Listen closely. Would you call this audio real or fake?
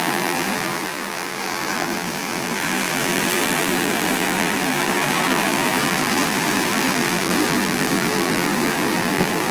fake